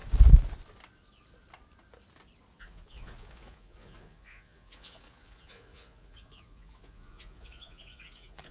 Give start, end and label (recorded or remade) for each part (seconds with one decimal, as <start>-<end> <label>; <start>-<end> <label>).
0.0-2.6 recorded; 2.6-8.5 remade

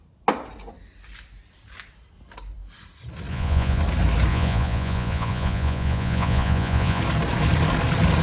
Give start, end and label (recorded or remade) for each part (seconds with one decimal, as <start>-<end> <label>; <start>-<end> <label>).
0.0-3.3 recorded; 3.3-3.8 remade; 3.8-4.3 recorded; 4.3-7.0 remade; 7.0-8.2 recorded

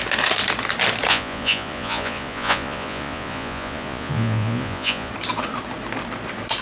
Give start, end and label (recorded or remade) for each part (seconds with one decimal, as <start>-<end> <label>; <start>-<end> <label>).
0.0-1.1 recorded; 1.1-5.1 remade; 5.1-6.6 recorded

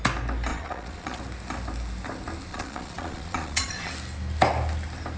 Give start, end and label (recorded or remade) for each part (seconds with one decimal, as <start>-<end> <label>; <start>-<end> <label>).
0.0-0.5 recorded; 0.5-1.2 remade; 1.2-2.5 recorded; 2.5-3.9 remade; 3.9-5.2 recorded

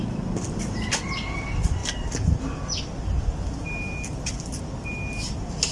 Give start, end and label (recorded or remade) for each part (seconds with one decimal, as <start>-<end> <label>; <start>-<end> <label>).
0.0-5.7 recorded

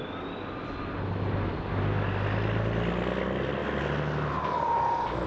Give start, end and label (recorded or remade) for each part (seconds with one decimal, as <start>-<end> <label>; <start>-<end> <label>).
0.0-5.3 recorded

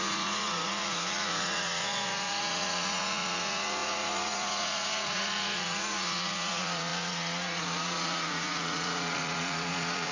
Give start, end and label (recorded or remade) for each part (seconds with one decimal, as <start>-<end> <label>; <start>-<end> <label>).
0.0-10.1 remade